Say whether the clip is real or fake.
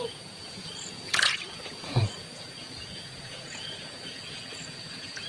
fake